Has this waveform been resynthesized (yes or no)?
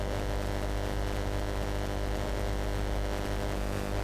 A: no